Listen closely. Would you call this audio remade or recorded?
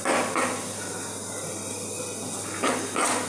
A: recorded